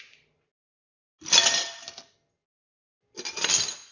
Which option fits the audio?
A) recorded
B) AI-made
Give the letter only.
A